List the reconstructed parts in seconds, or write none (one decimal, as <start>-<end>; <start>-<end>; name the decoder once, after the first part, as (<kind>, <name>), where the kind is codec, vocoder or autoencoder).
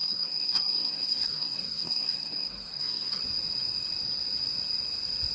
0.0-3.2 (codec, SNAC)